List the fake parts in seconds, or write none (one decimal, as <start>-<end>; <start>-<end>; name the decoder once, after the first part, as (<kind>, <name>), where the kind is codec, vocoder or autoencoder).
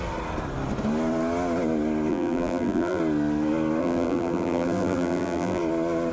2.1-3.0 (vocoder, BigVGAN v2); 3.8-5.6